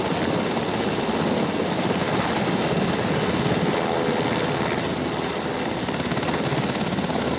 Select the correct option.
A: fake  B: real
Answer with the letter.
B